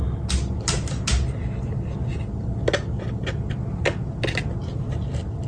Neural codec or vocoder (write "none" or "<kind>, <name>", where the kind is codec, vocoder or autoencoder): none